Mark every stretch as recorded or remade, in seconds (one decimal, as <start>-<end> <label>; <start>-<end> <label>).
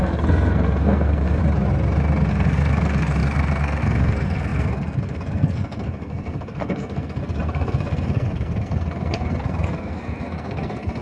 0.0-1.4 remade; 1.4-2.3 recorded; 2.3-11.0 remade